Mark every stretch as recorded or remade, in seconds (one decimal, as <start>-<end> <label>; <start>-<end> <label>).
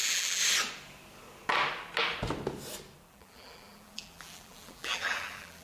0.0-0.4 remade; 0.4-3.1 recorded; 3.1-5.6 remade